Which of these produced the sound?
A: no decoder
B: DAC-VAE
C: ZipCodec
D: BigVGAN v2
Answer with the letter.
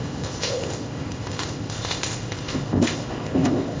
C